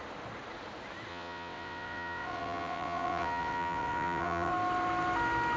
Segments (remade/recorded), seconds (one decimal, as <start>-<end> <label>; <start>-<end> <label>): 0.0-1.1 recorded; 1.1-4.5 remade; 4.5-5.6 recorded